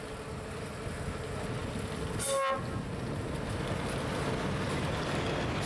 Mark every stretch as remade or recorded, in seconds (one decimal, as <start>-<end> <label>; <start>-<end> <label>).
0.0-5.7 recorded